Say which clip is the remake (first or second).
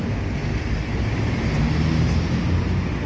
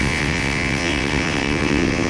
second